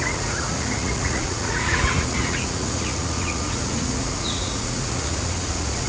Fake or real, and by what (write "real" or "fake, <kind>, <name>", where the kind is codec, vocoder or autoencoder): fake, vocoder, Vocos